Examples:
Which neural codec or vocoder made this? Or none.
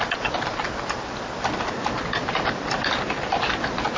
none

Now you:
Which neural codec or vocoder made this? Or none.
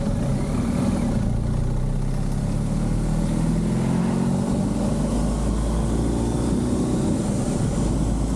none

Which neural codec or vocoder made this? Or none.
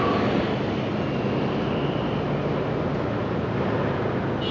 none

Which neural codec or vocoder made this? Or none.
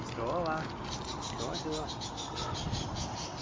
none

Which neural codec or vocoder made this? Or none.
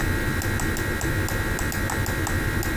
none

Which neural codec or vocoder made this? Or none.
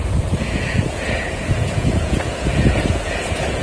vocoder, Vocos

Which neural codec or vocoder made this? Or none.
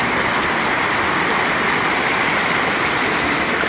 none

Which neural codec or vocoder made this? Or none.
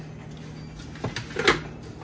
none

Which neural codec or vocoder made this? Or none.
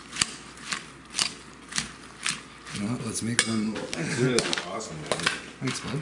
none